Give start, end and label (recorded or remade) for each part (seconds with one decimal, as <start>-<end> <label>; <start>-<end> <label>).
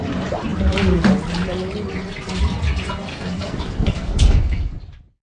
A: 0.0-3.1 recorded; 3.1-4.7 remade; 4.7-5.3 recorded